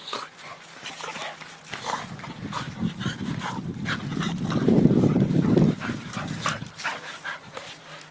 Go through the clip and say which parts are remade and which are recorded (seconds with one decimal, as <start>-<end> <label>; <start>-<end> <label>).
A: 0.0-0.6 remade; 0.6-8.1 recorded